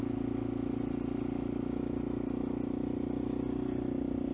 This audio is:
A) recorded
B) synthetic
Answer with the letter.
A